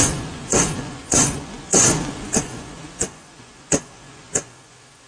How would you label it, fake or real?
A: fake